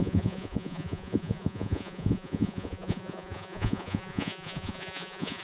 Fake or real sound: fake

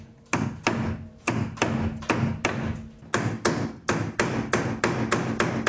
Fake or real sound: real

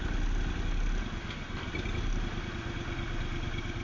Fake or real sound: real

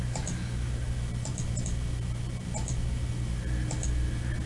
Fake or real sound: real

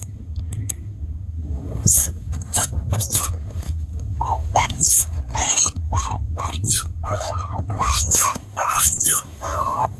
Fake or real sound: fake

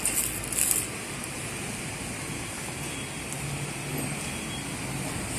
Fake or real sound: real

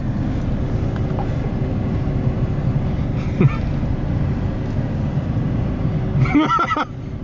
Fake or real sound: real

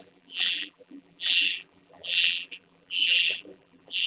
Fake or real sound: fake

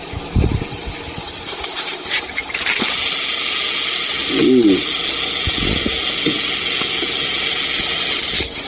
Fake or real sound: real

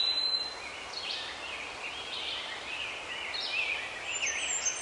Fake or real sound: real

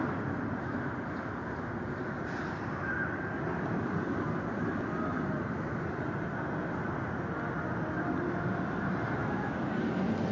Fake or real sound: real